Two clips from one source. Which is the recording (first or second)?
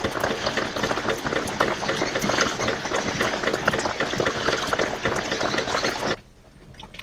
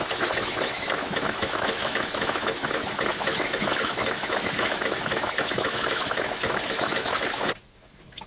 first